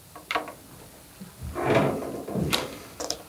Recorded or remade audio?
recorded